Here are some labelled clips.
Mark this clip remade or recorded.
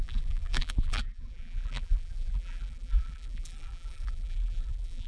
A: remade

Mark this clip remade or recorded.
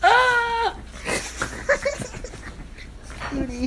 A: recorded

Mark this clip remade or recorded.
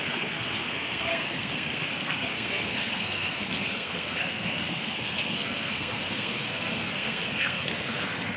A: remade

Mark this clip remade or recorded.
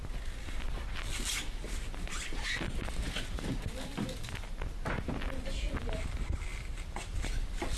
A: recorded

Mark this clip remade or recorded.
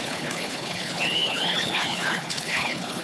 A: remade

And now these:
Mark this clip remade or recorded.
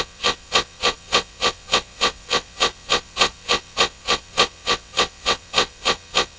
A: remade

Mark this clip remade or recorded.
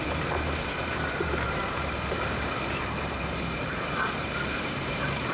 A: remade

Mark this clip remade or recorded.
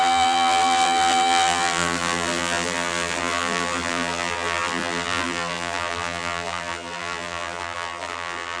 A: remade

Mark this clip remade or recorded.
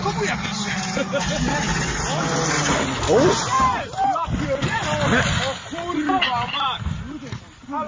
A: recorded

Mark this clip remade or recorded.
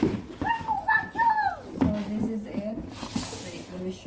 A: recorded